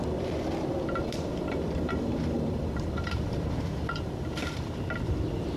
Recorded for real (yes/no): no